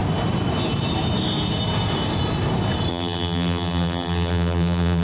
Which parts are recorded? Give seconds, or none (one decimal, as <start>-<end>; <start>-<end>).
0.0-2.9